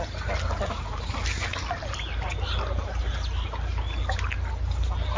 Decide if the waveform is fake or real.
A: real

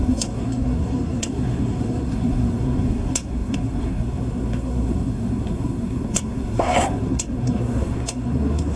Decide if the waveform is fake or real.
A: fake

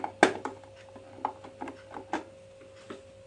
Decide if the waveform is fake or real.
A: real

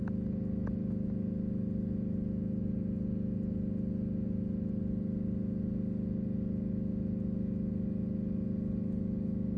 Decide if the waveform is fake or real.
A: real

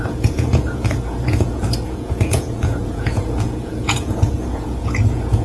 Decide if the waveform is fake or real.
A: fake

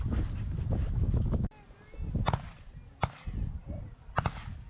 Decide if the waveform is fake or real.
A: real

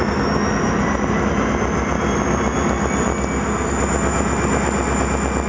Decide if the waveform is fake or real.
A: real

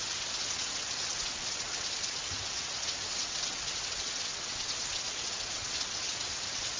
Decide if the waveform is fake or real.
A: fake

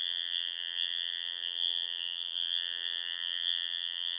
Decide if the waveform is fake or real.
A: fake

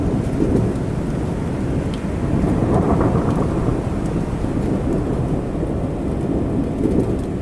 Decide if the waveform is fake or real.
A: real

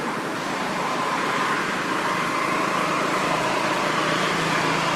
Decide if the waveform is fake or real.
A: fake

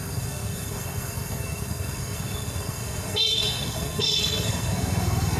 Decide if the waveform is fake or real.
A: fake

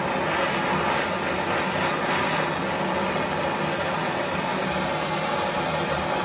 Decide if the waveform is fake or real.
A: real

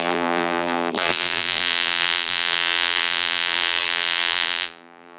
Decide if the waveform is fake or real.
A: fake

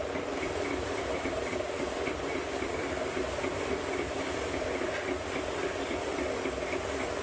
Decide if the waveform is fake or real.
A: fake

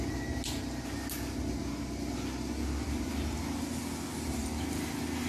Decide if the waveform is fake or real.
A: real